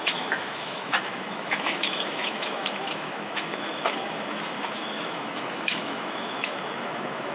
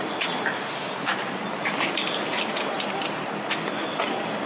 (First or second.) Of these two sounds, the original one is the second